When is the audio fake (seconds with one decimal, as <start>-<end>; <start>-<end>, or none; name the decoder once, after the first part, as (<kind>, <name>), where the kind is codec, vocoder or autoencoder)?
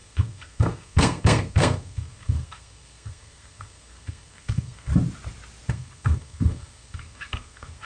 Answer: 0.0-4.9 (codec, SNAC); 5.7-7.9